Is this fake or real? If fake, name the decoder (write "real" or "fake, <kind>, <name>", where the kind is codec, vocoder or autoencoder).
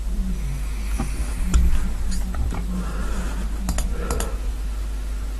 real